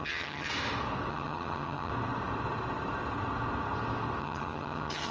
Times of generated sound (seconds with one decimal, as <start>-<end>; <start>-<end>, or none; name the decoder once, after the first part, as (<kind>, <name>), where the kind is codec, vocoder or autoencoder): 0.0-0.5 (vocoder, HiFi-GAN); 1.1-1.9; 4.2-5.1